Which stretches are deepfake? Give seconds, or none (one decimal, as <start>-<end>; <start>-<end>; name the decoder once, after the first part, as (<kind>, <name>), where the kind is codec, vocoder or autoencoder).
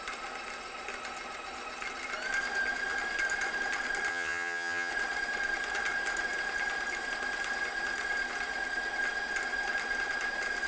4.1-4.9 (vocoder, HiFi-GAN)